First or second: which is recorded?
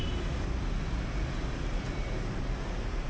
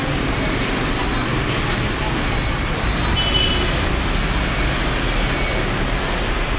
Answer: second